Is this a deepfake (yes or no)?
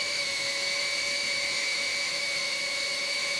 yes